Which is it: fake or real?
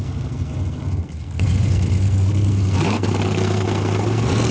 fake